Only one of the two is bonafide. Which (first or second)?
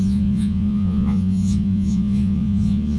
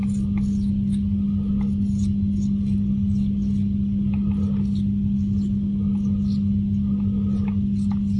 second